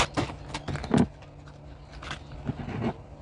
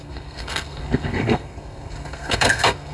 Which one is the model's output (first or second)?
second